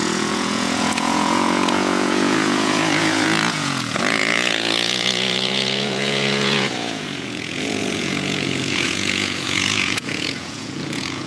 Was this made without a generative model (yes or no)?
no